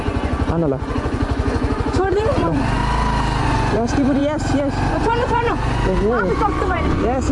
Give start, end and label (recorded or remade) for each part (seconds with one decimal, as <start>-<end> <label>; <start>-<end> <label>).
0.0-2.8 remade; 2.8-3.4 recorded; 3.4-4.2 remade; 4.2-4.9 recorded; 4.9-7.3 remade